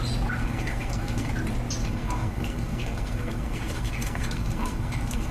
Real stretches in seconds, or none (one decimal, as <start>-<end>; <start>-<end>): 0.0-0.4; 1.3-1.8